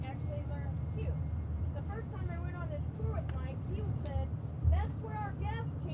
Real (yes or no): yes